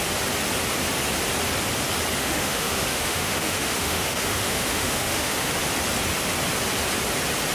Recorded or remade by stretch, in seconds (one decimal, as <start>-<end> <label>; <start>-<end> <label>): 0.0-2.2 recorded; 2.2-5.5 remade; 5.5-7.5 recorded